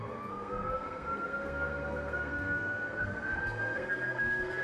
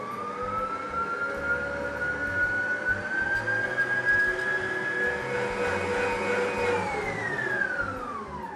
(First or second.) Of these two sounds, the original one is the second